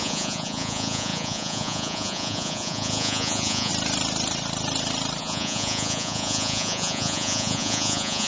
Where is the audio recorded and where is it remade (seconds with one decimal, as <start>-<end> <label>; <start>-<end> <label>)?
0.0-3.7 remade; 3.7-5.2 recorded; 5.2-8.3 remade